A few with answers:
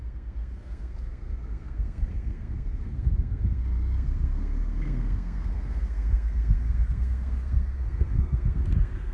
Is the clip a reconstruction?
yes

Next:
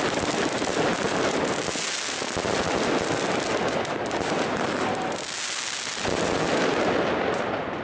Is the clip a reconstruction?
no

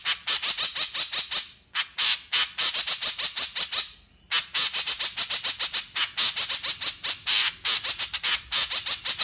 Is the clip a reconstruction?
no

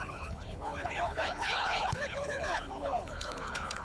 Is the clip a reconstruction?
yes